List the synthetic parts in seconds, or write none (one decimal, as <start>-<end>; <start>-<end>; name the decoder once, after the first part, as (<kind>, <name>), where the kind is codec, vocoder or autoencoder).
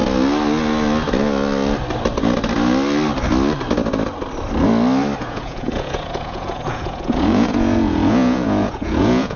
5.2-9.4 (vocoder, Vocos)